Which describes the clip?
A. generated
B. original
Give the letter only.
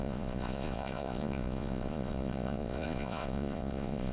A